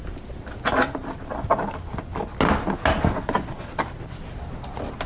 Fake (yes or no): no